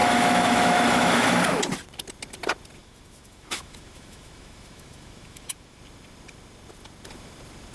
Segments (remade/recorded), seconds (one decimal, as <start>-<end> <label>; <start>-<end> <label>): 0.0-1.4 remade; 1.4-2.8 recorded; 2.8-5.8 remade; 5.8-7.7 recorded